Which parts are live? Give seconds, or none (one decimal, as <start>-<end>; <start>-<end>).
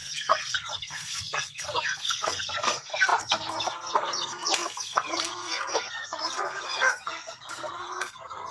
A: none